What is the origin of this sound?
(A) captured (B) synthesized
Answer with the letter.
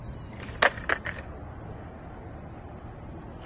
A